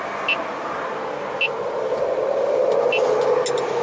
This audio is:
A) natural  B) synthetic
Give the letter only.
A